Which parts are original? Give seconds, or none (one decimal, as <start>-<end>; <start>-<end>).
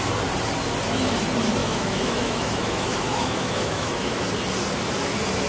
0.0-1.6; 4.2-5.5